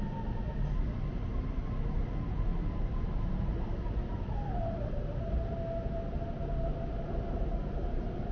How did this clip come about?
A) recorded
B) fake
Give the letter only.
A